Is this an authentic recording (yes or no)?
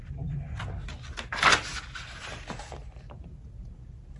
yes